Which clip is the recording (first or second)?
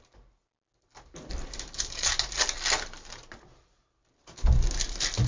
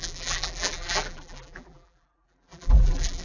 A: first